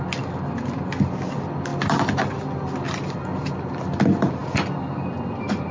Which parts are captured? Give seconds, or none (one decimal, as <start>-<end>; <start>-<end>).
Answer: 0.0-5.7